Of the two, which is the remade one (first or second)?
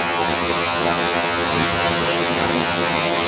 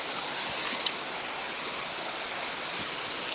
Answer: first